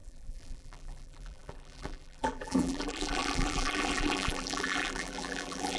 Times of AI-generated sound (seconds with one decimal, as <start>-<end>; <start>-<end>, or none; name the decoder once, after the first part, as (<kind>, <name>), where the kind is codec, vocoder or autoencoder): 0.0-5.8 (vocoder, BigVGAN v2)